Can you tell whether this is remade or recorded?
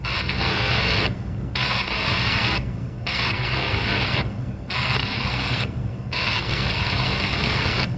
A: remade